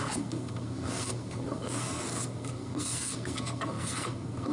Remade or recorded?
remade